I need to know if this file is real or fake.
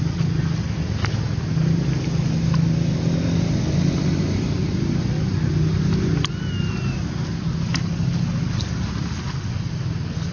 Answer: real